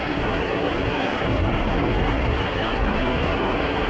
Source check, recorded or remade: remade